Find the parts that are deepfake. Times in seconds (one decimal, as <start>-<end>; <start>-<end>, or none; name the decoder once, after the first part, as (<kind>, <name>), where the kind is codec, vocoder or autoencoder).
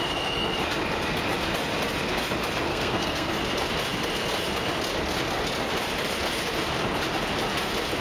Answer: 2.7-3.3 (codec, SNAC)